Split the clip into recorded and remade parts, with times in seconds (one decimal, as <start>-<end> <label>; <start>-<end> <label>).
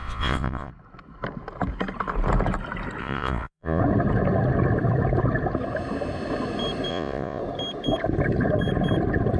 0.0-0.7 remade; 0.7-3.0 recorded; 3.0-3.8 remade; 3.8-6.9 recorded; 6.9-7.4 remade; 7.4-9.4 recorded